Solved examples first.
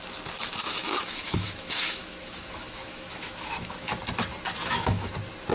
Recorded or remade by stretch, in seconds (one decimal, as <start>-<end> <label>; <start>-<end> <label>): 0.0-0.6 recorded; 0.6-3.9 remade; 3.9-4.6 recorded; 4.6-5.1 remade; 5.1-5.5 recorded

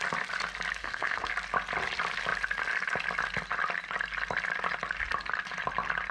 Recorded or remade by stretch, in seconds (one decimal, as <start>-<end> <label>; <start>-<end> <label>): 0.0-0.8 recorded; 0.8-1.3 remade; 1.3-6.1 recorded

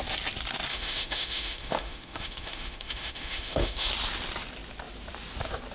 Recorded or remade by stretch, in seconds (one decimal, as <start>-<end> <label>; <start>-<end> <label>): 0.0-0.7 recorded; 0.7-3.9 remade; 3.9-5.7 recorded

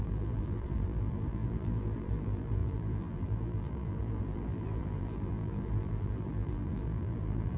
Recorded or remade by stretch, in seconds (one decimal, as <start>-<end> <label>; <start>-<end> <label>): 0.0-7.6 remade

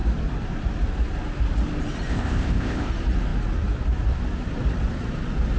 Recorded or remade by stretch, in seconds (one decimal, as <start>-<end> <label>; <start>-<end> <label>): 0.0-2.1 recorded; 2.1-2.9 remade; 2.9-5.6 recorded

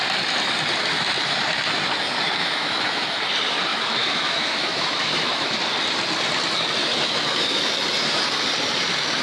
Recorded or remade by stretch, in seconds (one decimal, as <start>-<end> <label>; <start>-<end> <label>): 0.0-2.4 recorded; 2.4-3.2 remade; 3.2-3.7 recorded; 3.7-5.6 remade; 5.6-6.8 recorded; 6.8-7.6 remade; 7.6-9.2 recorded